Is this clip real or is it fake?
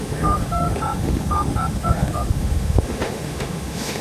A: fake